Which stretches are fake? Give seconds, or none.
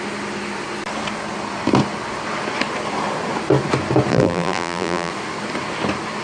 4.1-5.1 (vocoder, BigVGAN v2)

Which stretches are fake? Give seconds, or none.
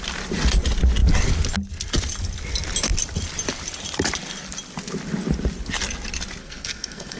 6.4-7.2 (codec, SNAC)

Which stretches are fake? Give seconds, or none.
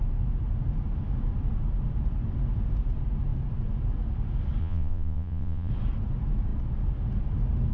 4.6-5.7 (vocoder, Vocos)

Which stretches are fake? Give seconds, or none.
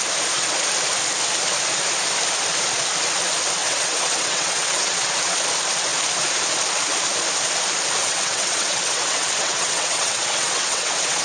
3.6-5.1 (vocoder, WaveNeXt); 8.0-11.2